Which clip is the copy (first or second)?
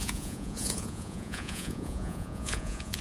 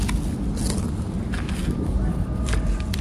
first